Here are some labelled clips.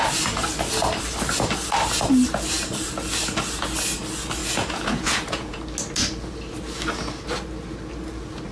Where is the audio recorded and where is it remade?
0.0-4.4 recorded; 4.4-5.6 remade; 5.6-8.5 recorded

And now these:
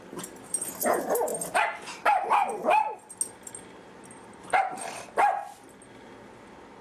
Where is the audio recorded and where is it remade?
0.0-6.8 recorded